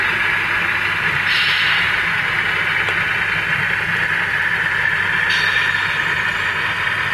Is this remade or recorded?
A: recorded